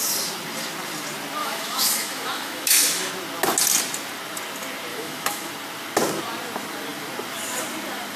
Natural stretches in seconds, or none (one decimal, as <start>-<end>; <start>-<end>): 0.0-1.4; 3.1-4.9; 5.5-8.2